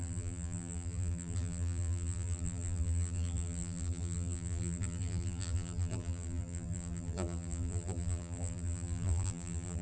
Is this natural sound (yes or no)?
no